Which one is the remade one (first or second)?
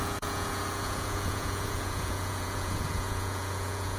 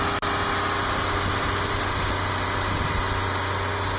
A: first